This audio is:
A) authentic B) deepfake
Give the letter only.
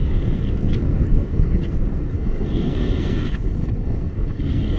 B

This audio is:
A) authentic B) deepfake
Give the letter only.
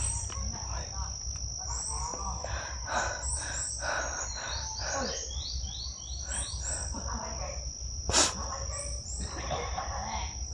A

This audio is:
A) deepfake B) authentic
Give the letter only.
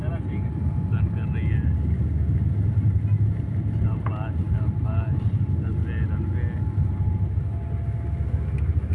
B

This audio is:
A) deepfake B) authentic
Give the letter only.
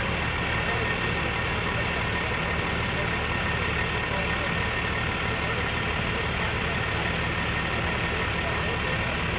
B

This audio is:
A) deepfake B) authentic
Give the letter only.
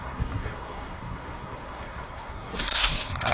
A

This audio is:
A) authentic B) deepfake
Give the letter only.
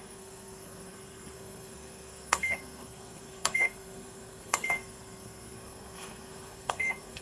B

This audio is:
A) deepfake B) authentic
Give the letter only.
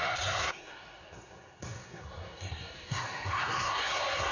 A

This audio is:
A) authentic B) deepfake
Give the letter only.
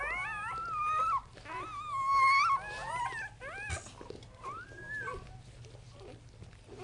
A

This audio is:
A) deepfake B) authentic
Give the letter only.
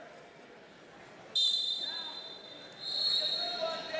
B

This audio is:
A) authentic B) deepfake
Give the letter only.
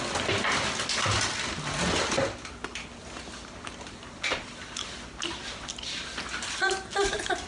A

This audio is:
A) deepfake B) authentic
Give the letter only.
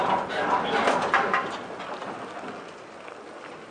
B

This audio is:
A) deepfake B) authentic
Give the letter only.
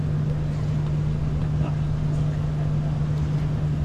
B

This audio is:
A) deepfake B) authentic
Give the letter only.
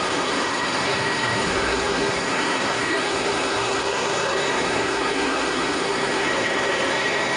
A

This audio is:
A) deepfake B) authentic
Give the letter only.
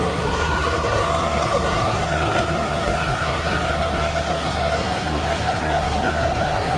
A